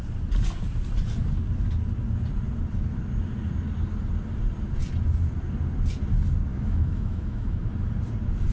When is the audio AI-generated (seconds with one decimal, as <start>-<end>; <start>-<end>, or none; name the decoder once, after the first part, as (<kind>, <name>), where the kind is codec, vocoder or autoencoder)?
6.5-7.7 (autoencoder, DAC-VAE)